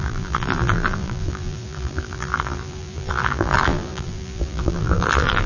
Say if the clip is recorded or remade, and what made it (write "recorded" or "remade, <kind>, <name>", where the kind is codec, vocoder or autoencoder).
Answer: remade, vocoder, BigVGAN v2